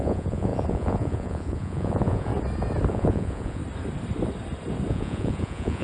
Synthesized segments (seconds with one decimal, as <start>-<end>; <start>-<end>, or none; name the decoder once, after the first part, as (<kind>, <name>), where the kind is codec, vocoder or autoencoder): 0.0-2.3 (vocoder, Vocos); 2.9-3.6; 4.9-5.8